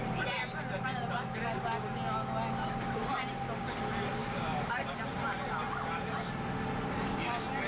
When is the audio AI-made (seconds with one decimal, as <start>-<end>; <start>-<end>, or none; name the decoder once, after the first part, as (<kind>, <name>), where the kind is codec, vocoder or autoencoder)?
none